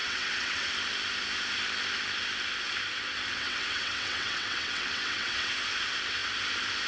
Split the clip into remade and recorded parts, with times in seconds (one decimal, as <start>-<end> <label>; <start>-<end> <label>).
0.0-0.7 remade; 0.7-3.3 recorded; 3.3-5.5 remade; 5.5-6.9 recorded